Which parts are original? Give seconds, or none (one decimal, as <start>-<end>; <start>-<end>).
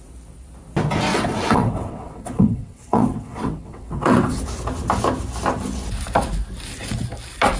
0.0-1.1; 4.4-7.6